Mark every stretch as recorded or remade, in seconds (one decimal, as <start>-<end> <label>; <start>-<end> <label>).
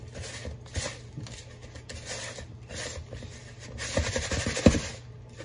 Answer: 0.0-5.4 recorded